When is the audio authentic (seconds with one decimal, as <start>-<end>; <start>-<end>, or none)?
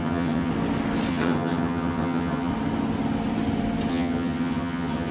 0.5-1.1; 2.5-3.9